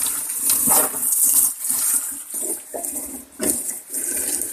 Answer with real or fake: real